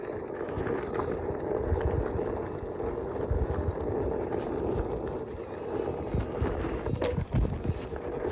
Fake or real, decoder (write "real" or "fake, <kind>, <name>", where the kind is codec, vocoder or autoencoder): real